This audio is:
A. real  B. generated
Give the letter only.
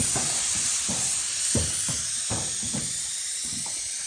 A